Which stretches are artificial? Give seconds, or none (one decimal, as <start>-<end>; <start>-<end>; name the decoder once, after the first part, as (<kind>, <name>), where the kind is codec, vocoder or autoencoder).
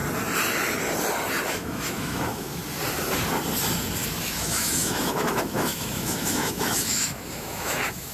1.5-2.6 (autoencoder, DAC-VAE); 4.2-8.1